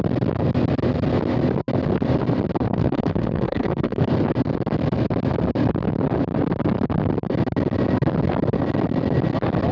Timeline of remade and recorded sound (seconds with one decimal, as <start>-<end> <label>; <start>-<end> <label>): 0.0-2.7 recorded; 2.7-4.1 remade; 4.1-9.7 recorded